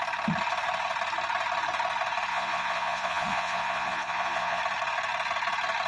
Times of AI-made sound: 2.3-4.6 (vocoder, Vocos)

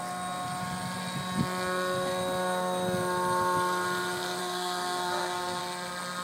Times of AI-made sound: 4.4-5.6 (codec, SNAC)

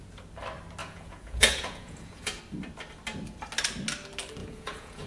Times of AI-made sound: 0.8-2.4 (vocoder, Vocos); 4.4-5.1

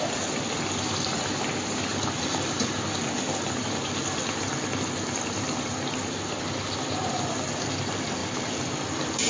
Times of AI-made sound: none

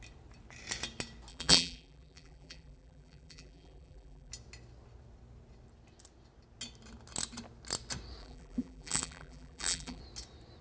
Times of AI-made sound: 1.3-4.3 (vocoder, BigVGAN v2); 8.2-10.0